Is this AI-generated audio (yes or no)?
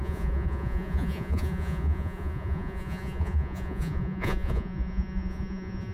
yes